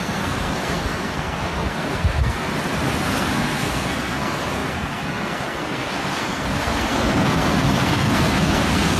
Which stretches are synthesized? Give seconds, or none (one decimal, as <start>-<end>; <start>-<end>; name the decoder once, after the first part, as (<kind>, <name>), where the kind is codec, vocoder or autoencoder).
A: 0.0-2.5 (codec, SNAC); 3.0-9.0